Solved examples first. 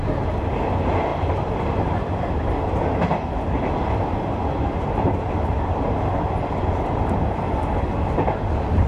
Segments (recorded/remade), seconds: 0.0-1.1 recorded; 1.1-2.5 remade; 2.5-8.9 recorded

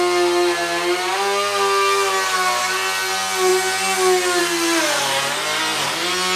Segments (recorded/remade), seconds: 0.0-6.4 recorded

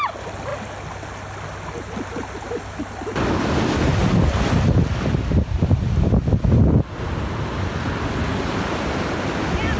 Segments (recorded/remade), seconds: 0.0-9.8 recorded

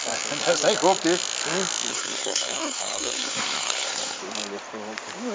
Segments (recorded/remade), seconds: 0.0-1.9 recorded; 1.9-4.2 remade; 4.2-5.3 recorded

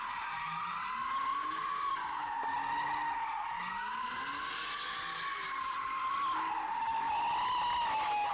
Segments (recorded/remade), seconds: 0.0-8.3 recorded

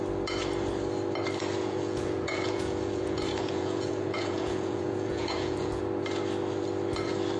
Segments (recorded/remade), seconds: 0.0-1.6 recorded; 1.6-5.8 remade; 5.8-7.4 recorded

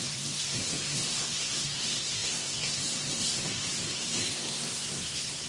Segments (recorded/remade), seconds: 0.0-5.5 remade